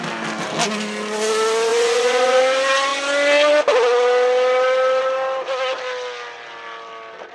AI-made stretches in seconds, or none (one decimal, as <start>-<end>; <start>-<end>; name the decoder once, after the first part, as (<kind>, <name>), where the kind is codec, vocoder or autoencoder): 1.7-2.4 (vocoder, Vocos)